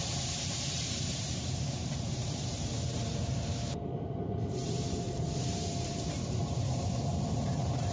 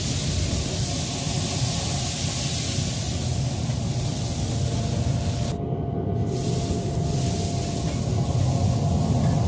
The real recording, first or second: second